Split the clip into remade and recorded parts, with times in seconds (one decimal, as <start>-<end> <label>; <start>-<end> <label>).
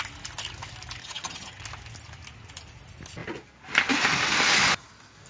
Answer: 0.0-1.0 recorded; 1.0-1.6 remade; 1.6-5.3 recorded